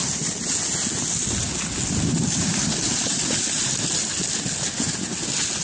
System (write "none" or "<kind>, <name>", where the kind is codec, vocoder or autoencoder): none